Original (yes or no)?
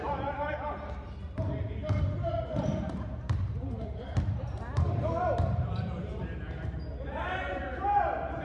no